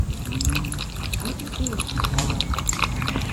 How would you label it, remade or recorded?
remade